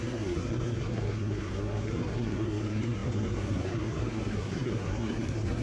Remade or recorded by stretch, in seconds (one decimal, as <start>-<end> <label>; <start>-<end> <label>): 0.0-5.6 remade